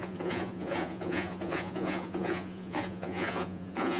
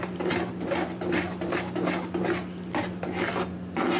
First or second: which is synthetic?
first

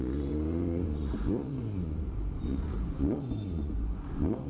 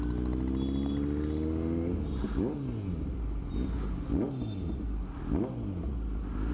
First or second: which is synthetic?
first